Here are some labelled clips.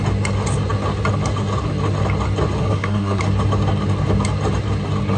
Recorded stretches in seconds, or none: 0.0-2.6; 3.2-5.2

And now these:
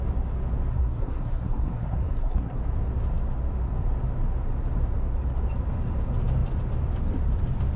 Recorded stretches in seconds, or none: 0.0-0.7; 2.6-7.8

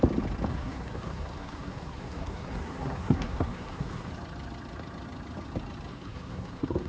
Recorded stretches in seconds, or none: 0.0-0.5; 4.1-5.9

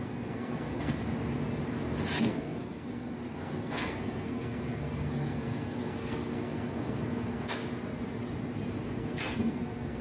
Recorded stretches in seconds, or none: 1.0-2.2; 7.6-8.8

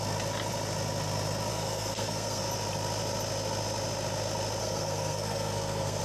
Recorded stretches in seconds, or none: 0.0-1.5; 2.4-4.6

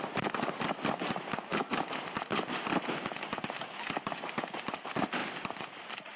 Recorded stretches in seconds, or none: 0.0-6.2

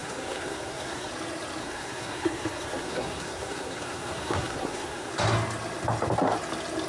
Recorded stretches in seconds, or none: 1.1-1.6; 5.1-6.9

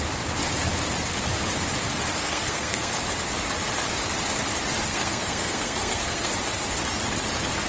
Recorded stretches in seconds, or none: 0.0-2.2; 2.9-4.9; 6.3-7.7